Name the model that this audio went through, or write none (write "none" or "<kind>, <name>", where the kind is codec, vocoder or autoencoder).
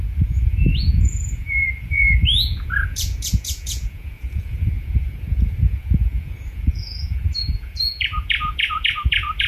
vocoder, Vocos